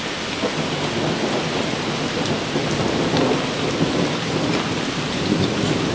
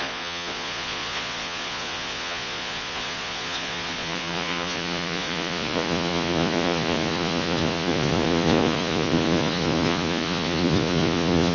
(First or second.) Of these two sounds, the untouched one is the first